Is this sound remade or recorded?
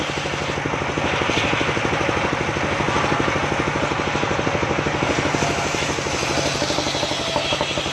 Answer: recorded